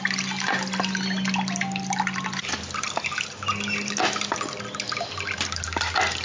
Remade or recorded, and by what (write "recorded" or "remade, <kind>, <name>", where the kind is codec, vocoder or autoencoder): recorded